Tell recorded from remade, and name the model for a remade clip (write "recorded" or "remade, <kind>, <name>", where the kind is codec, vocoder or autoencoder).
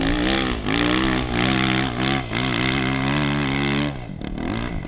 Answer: recorded